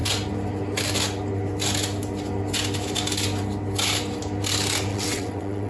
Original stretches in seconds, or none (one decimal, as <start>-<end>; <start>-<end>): 0.0-4.9